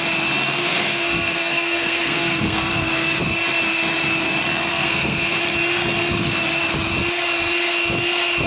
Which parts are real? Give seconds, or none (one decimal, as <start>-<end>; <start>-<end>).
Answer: 0.0-0.6; 3.2-4.7; 5.4-8.5